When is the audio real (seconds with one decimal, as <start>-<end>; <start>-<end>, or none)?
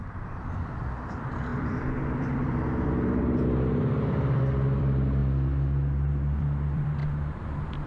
5.2-6.4; 7.0-7.9